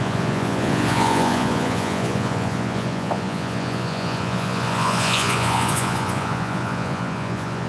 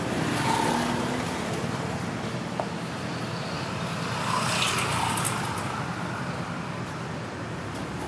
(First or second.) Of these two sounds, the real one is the second